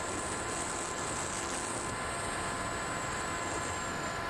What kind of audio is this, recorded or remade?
recorded